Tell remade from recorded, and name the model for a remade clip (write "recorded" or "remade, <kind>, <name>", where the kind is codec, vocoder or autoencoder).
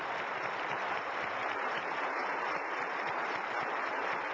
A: recorded